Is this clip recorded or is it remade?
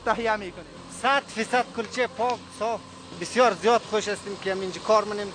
recorded